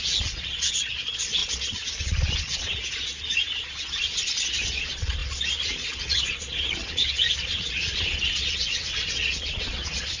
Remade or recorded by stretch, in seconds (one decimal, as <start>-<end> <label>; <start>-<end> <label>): 0.0-10.2 remade